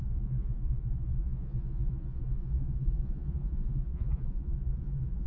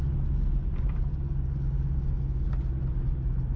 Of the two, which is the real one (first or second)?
second